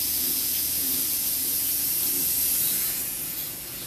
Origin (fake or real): fake